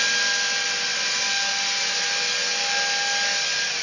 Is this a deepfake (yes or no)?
no